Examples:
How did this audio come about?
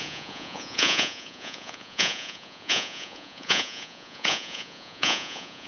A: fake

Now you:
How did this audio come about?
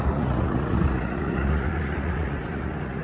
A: fake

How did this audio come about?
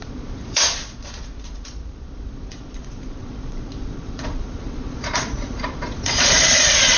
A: fake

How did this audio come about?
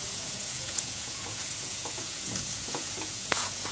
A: fake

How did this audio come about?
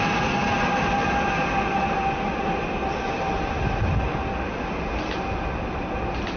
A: real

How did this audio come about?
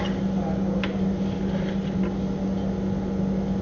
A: real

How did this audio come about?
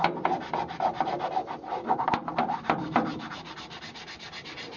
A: real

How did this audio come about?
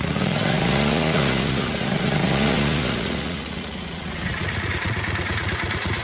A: fake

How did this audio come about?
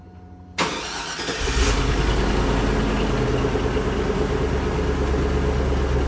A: real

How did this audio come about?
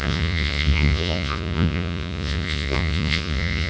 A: fake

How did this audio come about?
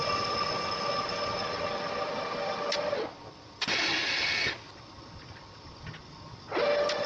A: real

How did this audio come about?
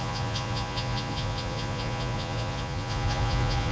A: fake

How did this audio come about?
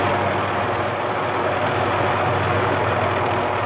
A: real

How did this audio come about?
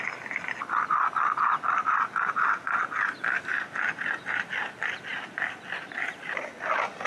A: real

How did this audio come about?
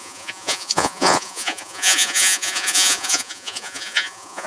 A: fake